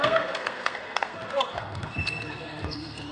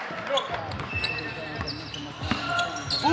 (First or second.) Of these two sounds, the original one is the second